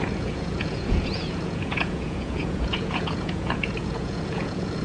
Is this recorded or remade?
remade